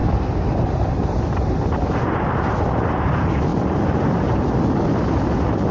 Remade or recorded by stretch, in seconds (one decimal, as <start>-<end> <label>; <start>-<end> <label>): 0.0-5.7 recorded